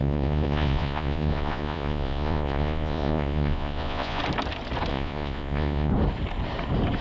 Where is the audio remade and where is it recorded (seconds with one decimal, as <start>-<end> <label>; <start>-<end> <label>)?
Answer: 0.0-4.2 remade; 4.2-4.9 recorded; 4.9-5.9 remade; 5.9-7.0 recorded